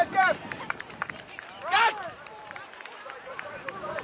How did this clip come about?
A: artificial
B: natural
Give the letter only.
A